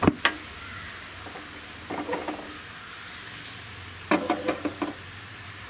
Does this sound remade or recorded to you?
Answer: recorded